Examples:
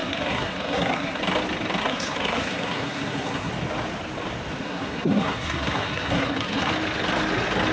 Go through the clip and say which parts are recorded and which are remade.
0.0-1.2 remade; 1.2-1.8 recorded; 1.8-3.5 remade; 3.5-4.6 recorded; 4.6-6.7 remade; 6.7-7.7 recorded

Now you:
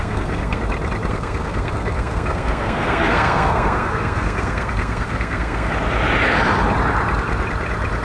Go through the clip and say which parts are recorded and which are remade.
0.0-0.6 remade; 0.6-1.1 recorded; 1.1-5.7 remade; 5.7-8.0 recorded

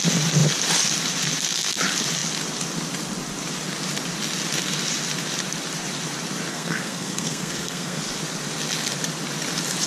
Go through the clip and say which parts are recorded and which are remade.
0.0-6.5 recorded; 6.5-8.0 remade; 8.0-9.9 recorded

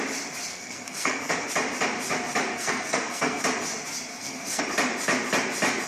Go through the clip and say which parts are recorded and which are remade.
0.0-0.5 recorded; 0.5-1.5 remade; 1.5-2.5 recorded; 2.5-3.4 remade; 3.4-4.1 recorded; 4.1-4.6 remade; 4.6-5.9 recorded